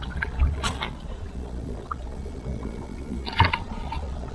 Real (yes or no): no